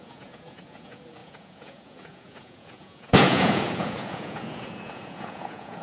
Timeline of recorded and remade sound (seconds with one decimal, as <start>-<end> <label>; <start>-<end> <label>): 0.0-5.8 remade